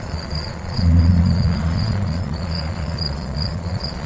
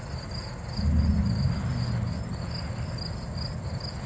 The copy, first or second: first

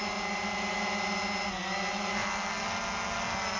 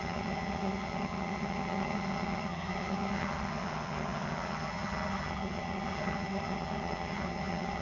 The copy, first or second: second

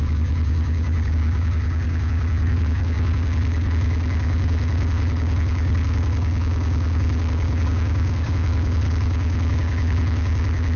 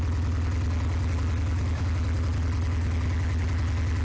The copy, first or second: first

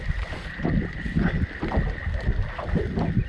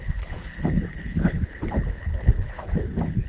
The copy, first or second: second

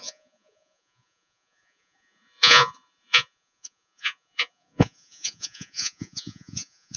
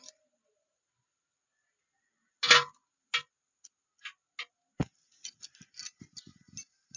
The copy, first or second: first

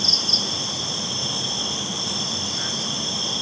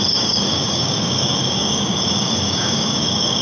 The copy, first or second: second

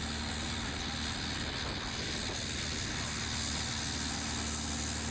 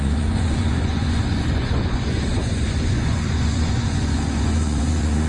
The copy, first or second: second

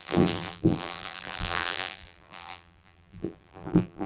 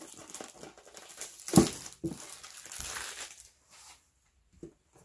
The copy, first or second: first